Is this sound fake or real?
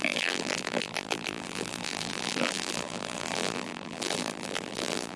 fake